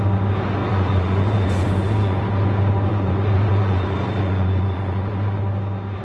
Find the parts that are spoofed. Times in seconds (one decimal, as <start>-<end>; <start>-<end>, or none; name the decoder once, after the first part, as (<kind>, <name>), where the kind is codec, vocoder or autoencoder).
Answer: 0.6-2.2 (vocoder, Vocos); 2.9-5.4